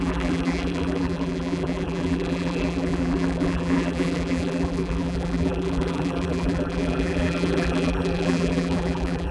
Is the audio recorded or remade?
remade